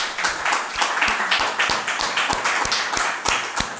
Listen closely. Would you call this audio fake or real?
real